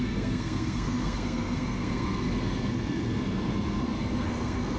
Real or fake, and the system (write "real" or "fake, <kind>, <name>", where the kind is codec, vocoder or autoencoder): fake, codec, SNAC